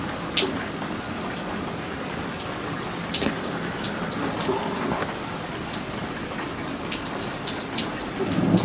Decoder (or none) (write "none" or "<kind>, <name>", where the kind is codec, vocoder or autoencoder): none